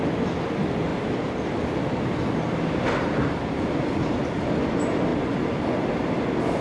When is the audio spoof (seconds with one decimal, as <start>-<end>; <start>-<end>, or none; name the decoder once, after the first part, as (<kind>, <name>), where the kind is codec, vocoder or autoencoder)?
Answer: none